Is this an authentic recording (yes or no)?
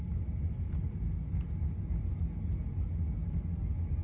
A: yes